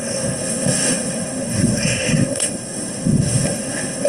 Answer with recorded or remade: remade